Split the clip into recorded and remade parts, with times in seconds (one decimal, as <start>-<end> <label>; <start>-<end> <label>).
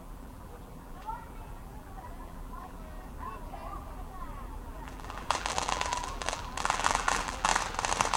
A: 0.0-7.5 remade; 7.5-8.2 recorded